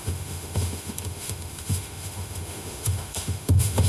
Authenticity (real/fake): fake